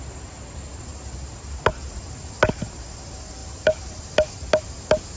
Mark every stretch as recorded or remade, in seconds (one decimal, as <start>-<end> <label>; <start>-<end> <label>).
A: 0.0-3.4 recorded; 3.4-4.3 remade; 4.3-5.2 recorded